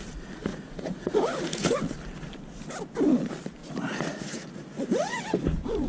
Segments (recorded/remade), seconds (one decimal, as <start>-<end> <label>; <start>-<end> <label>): 0.0-0.5 recorded; 0.5-1.8 remade; 1.8-3.6 recorded; 3.6-5.9 remade